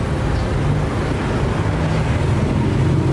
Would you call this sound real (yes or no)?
yes